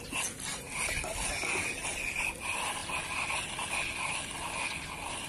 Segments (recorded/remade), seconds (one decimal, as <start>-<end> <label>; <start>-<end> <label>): 0.0-5.3 recorded

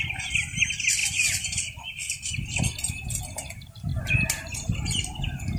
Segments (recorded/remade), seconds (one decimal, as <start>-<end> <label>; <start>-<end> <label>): 0.0-5.6 recorded